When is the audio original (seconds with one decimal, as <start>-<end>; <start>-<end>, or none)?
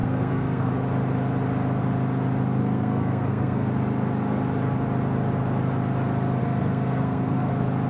0.7-2.6; 3.7-6.4; 7.5-7.9